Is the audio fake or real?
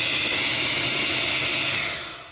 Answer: real